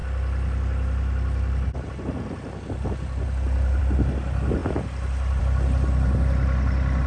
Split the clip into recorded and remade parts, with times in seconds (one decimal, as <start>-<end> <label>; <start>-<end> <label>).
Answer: 0.0-7.1 recorded